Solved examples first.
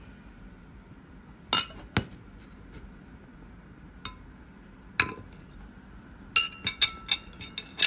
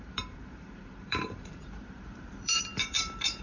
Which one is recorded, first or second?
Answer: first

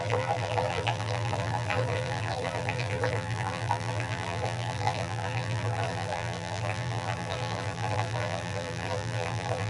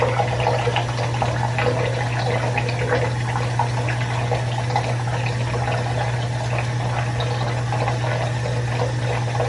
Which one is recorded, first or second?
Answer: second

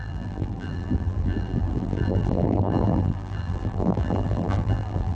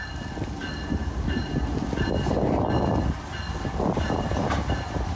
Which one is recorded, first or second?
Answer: second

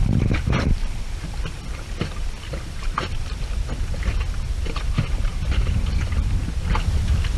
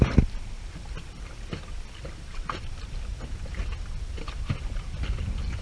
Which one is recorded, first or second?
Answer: second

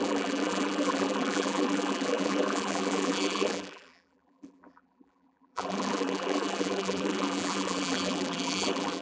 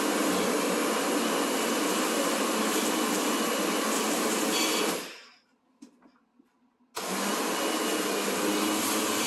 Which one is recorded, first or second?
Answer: second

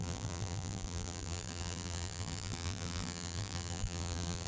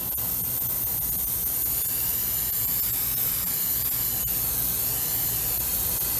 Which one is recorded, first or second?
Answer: second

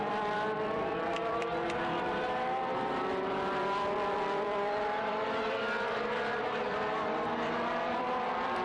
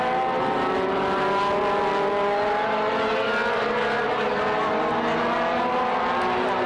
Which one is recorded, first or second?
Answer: second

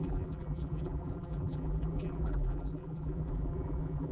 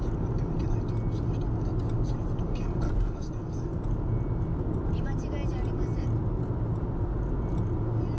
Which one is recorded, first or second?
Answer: second